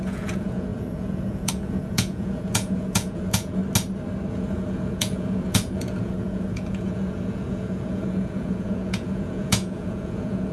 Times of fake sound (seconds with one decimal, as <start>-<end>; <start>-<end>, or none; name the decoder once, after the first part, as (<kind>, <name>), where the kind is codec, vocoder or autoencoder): 0.0-3.6 (vocoder, Vocos); 4.3-10.5